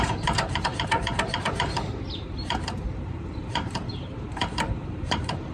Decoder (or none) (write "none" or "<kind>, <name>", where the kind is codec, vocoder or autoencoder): vocoder, BigVGAN v2